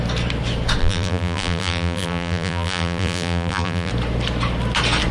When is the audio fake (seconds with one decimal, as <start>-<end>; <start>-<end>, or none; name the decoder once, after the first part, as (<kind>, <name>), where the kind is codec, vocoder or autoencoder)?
0.8-3.9 (vocoder, BigVGAN v2)